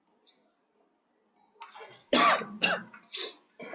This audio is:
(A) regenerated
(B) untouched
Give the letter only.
B